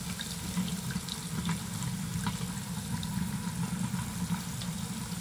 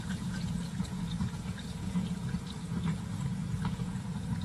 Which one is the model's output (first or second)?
second